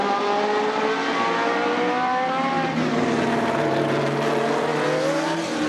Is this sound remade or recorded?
recorded